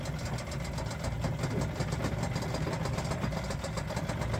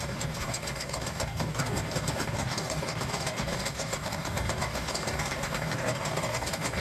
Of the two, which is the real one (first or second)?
first